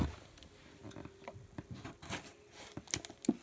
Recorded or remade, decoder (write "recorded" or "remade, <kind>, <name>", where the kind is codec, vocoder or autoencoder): recorded